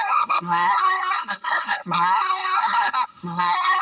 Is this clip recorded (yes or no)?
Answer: no